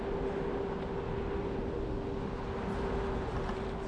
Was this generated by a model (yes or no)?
no